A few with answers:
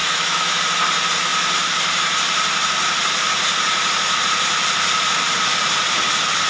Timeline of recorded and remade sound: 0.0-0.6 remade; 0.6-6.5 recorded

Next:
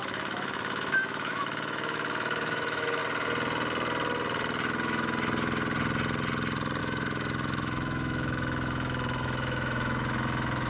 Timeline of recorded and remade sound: 0.0-3.0 remade; 3.0-6.8 recorded; 6.8-10.7 remade

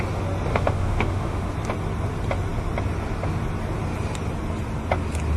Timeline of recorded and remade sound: 0.0-0.5 recorded; 0.5-1.5 remade; 1.5-5.4 recorded

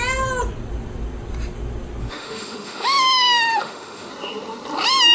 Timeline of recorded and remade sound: 0.0-2.0 recorded; 2.0-4.1 remade; 4.1-5.1 recorded

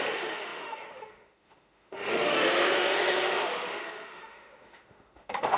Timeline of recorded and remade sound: 0.0-5.6 remade

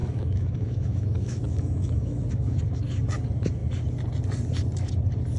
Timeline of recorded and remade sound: 0.0-2.6 remade; 2.6-5.4 recorded

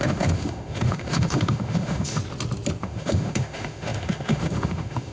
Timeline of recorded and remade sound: 0.0-2.2 remade; 2.2-2.8 recorded; 2.8-5.1 remade